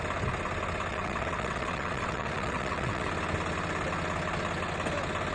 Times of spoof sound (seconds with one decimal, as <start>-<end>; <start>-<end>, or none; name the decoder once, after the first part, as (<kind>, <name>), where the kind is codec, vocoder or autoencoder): 0.9-3.1 (vocoder, WaveNeXt)

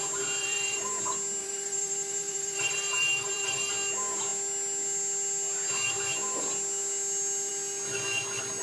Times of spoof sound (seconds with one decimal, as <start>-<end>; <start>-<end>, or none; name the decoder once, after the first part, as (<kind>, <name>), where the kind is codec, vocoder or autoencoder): 0.4-0.9 (vocoder, BigVGAN v2); 1.4-3.7

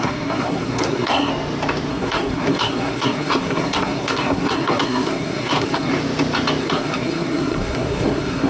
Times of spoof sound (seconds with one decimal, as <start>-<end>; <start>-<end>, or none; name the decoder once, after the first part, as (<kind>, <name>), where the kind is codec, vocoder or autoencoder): 0.0-1.3 (codec, SNAC); 1.9-5.9; 6.6-8.5